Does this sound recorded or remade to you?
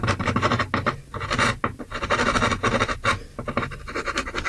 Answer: recorded